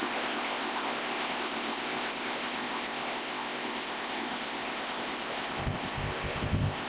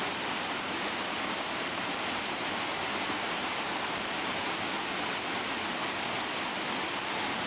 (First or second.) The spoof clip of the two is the first